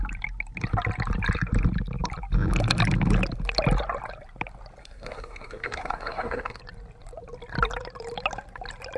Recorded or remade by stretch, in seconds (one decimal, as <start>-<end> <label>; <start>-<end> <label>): 0.0-4.8 recorded; 4.8-6.6 remade; 6.6-9.0 recorded